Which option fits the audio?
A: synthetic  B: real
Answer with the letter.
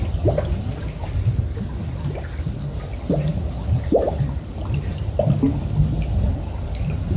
B